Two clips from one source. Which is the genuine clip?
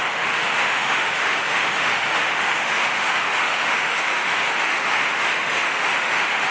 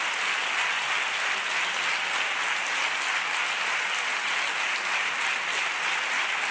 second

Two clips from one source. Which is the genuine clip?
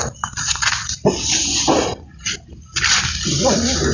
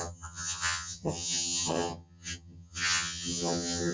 first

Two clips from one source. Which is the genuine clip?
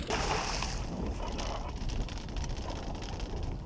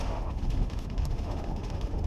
first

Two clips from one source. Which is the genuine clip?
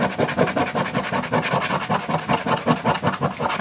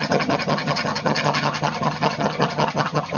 first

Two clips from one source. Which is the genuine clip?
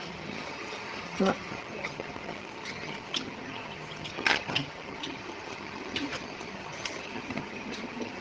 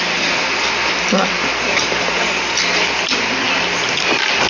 second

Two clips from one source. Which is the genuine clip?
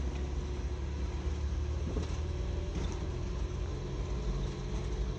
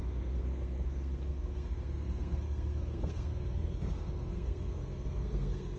first